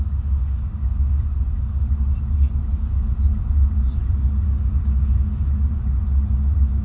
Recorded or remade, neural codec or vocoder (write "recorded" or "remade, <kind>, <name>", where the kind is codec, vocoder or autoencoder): recorded